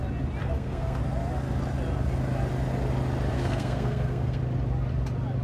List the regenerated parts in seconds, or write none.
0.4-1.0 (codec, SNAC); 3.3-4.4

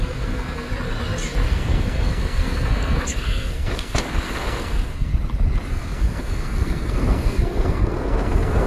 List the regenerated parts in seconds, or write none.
0.0-0.7 (codec, SNAC); 1.5-5.1; 5.7-8.7

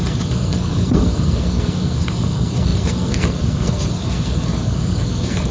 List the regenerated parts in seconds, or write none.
0.0-5.5 (codec, SNAC)

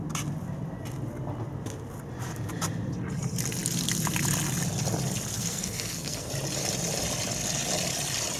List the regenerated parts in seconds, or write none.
5.3-6.3 (codec, SNAC)